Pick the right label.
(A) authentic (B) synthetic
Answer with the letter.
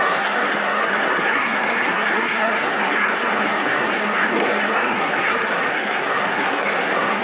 B